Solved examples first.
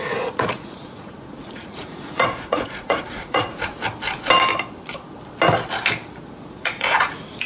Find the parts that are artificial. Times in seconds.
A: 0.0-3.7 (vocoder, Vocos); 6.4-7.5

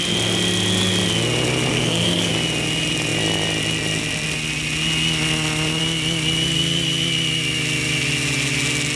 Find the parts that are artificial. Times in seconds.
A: 1.7-2.3 (codec, SNAC)

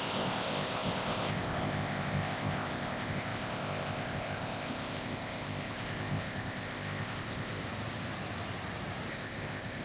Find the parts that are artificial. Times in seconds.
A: 0.0-7.6 (codec, ZipCodec); 9.1-9.8

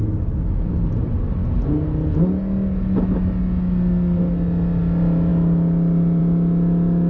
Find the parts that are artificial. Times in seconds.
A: none

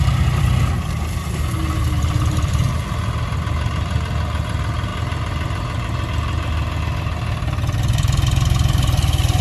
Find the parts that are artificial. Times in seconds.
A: none